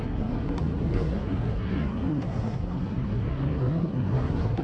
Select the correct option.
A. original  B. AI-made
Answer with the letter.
B